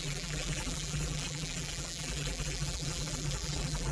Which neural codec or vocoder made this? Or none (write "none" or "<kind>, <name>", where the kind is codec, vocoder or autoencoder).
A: vocoder, BigVGAN v2